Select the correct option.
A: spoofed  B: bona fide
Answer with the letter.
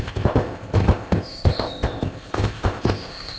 A